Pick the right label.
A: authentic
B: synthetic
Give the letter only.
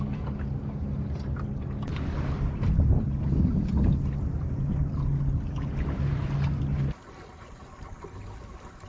A